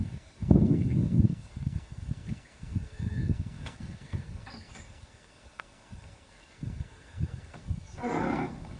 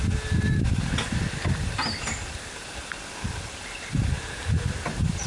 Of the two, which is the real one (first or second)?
second